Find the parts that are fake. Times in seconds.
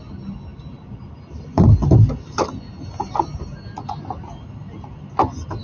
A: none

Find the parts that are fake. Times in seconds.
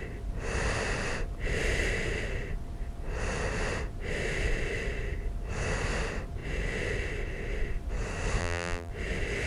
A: 8.4-8.9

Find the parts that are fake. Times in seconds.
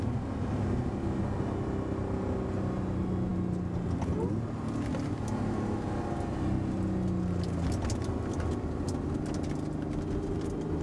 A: none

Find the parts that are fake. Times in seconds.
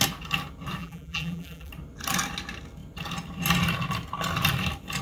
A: 0.8-1.7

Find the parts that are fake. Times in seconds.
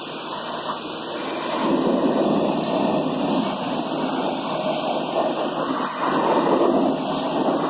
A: none